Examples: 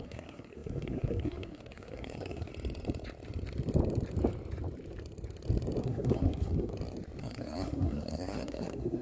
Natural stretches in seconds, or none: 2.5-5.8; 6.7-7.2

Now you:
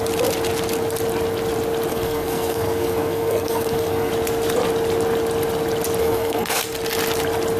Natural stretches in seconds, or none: 0.0-1.9; 4.1-6.0; 6.6-7.6

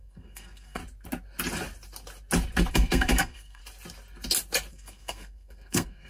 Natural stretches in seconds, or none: 0.8-2.7; 3.6-4.7

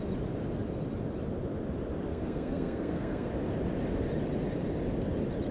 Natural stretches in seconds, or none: 0.0-2.1; 3.3-5.5